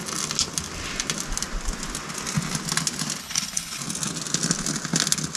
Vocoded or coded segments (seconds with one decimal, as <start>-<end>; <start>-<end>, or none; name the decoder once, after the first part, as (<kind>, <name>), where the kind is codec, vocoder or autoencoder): 3.2-3.8 (codec, HILCodec)